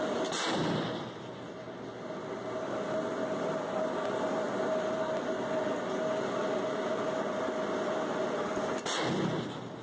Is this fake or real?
real